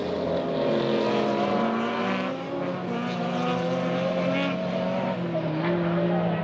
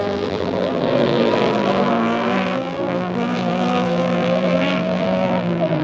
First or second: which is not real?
second